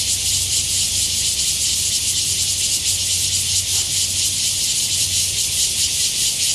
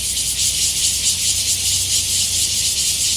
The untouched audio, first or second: second